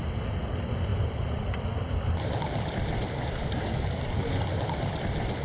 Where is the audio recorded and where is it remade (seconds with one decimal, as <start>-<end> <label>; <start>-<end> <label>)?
0.0-0.9 recorded; 0.9-3.6 remade; 3.6-5.4 recorded